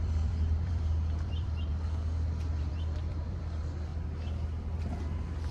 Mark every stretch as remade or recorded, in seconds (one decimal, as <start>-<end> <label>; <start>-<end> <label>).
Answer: 0.0-1.7 remade; 1.7-2.6 recorded; 2.6-3.9 remade; 3.9-4.8 recorded; 4.8-5.5 remade